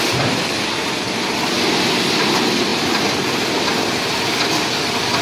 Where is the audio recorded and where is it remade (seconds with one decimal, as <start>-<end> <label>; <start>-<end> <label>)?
0.0-5.2 recorded